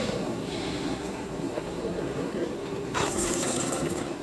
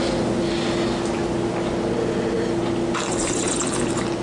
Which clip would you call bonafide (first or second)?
second